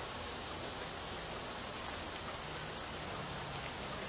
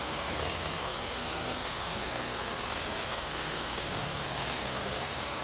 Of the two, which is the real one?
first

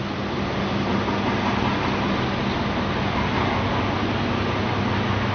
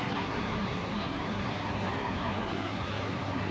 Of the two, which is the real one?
first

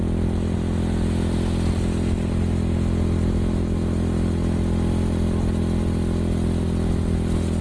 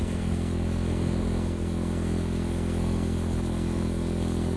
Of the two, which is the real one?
first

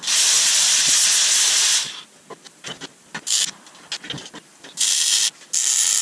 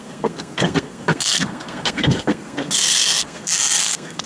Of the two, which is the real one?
first